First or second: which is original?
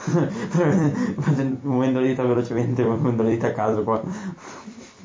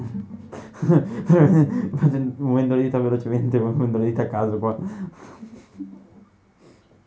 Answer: second